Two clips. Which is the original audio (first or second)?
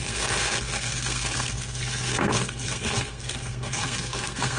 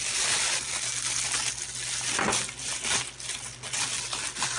second